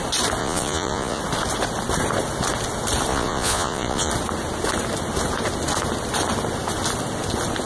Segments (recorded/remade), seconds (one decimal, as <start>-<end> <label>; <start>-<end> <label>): 0.0-0.4 recorded; 0.4-1.2 remade; 1.2-3.1 recorded; 3.1-4.1 remade; 4.1-7.7 recorded